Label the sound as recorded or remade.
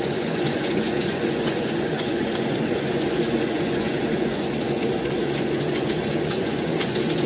remade